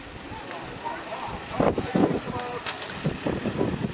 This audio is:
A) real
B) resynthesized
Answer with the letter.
A